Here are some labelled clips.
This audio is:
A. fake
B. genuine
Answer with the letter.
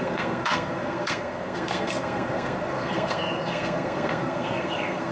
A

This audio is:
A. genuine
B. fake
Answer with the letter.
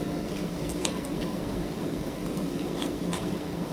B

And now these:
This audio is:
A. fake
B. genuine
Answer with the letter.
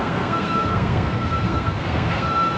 A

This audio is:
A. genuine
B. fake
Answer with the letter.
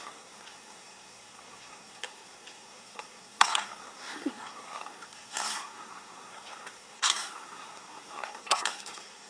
B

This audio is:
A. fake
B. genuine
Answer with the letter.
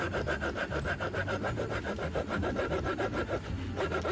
B